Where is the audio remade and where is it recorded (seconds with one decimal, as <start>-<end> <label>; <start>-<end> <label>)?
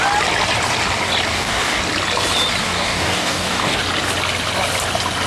0.0-1.3 recorded; 1.3-1.8 remade; 1.8-2.6 recorded; 2.6-3.8 remade; 3.8-5.3 recorded